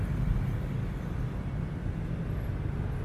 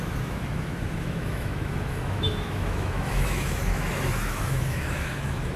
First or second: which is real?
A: first